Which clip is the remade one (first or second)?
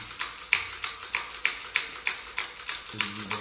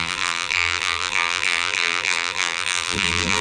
second